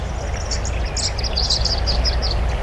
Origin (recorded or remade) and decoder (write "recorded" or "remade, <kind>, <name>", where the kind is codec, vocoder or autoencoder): recorded